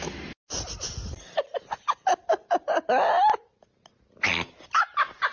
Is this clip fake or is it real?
real